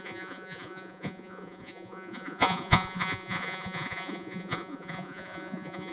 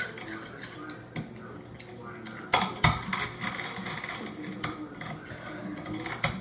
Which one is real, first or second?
second